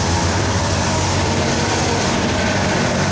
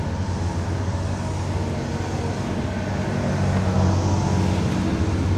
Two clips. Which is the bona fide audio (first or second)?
second